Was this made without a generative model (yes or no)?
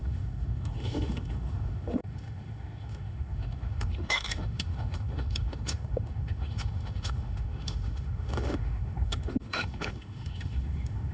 no